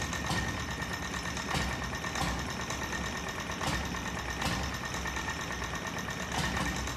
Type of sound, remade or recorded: recorded